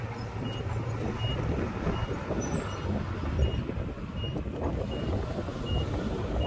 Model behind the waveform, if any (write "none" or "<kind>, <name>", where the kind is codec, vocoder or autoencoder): none